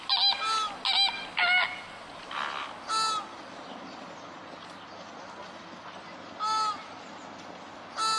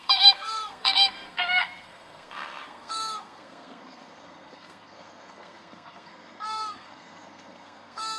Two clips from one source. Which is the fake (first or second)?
second